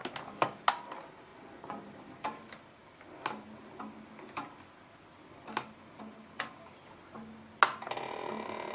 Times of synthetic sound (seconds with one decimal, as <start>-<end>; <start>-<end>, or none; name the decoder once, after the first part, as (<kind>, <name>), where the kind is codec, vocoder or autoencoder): 1.3-1.8 (vocoder, Vocos)